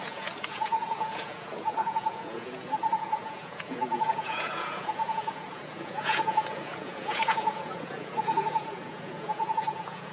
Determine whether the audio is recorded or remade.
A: remade